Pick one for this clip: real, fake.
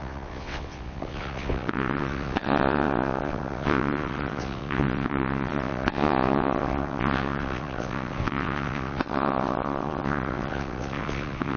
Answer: fake